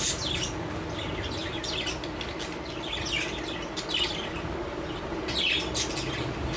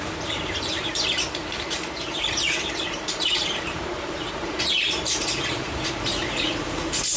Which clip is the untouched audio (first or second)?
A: first